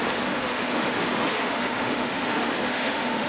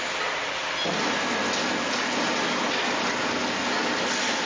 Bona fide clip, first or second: second